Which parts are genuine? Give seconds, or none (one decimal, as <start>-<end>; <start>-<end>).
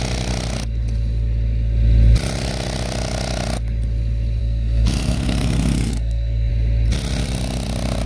0.0-4.4; 6.5-8.1